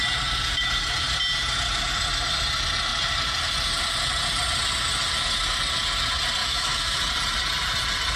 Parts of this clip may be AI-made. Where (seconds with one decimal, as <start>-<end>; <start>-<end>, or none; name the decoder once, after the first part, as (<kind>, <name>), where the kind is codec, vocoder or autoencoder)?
6.4-7.0 (autoencoder, DAC-VAE)